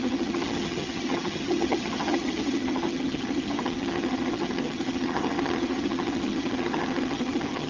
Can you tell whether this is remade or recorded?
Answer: remade